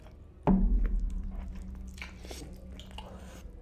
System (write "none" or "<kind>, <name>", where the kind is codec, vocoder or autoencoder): none